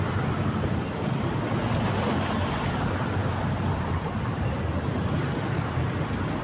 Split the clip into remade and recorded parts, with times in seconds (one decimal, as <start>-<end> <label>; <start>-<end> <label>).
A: 0.0-6.4 recorded